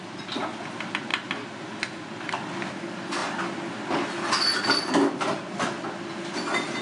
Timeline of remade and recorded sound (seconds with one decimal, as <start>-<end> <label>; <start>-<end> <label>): 0.0-6.8 recorded